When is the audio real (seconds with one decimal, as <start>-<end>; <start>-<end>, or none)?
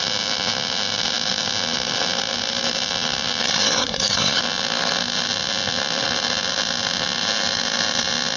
0.0-3.4; 4.4-8.4